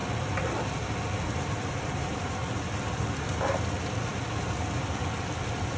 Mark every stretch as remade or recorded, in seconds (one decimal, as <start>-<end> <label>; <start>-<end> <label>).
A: 0.0-5.8 recorded